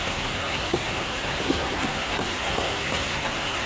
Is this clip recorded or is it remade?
remade